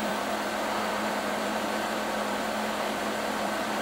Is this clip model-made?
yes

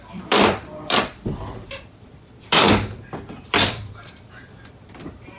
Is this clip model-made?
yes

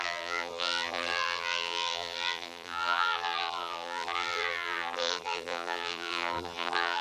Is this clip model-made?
yes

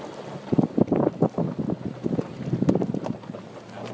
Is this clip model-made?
no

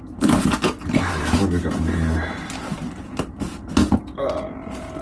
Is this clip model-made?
no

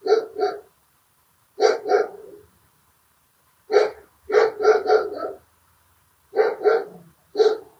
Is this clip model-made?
yes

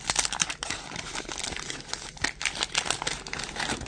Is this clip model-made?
no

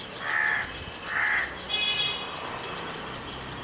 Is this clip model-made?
no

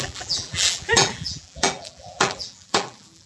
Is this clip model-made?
yes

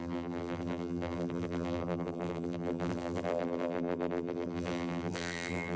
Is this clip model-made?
yes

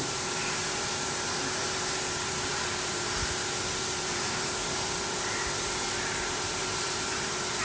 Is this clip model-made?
yes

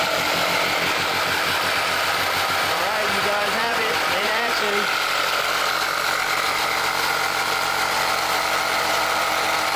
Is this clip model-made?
yes